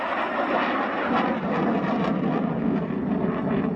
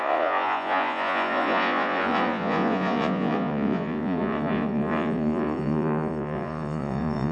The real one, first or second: first